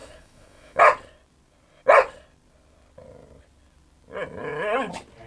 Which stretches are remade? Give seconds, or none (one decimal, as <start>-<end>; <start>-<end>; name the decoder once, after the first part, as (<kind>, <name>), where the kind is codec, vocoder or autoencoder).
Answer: 0.0-0.8 (autoencoder, DAC-VAE)